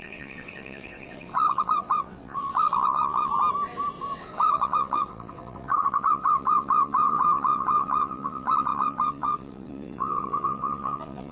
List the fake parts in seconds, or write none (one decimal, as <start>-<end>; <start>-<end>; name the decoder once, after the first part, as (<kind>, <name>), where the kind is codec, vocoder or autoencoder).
0.0-3.3 (vocoder, WaveNeXt); 4.0-11.3